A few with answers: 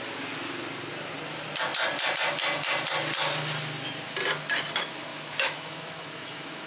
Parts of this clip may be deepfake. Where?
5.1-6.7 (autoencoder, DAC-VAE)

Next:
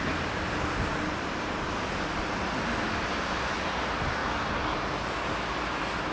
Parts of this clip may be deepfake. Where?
none

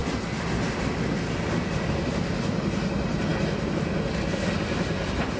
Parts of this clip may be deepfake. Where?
none

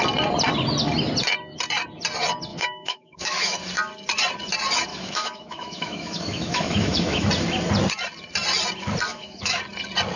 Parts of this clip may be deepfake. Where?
2.5-3.6 (autoencoder, DAC-VAE); 4.9-7.3; 9.1-9.6